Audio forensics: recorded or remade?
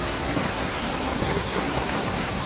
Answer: remade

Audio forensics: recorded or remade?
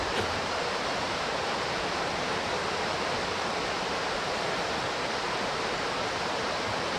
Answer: remade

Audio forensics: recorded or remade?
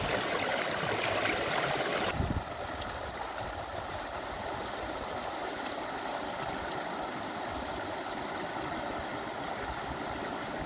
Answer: recorded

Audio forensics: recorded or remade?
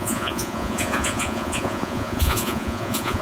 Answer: remade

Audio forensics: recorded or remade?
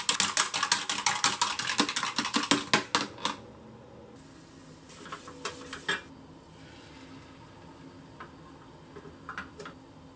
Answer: recorded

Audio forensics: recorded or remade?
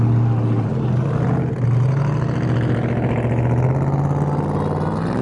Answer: recorded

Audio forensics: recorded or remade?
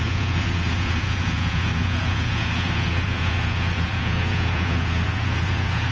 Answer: remade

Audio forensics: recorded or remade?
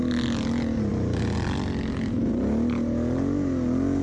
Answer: recorded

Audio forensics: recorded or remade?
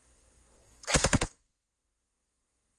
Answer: remade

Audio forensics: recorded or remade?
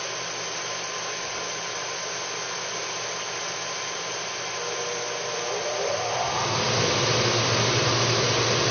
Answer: recorded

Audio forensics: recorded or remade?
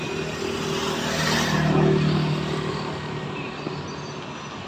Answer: recorded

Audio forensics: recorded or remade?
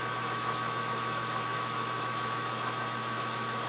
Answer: remade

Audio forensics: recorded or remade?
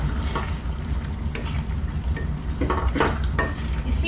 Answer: recorded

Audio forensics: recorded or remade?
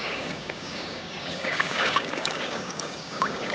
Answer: remade